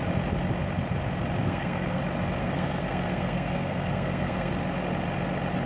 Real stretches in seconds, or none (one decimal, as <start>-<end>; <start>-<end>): 0.0-1.4; 2.0-2.4; 4.5-5.7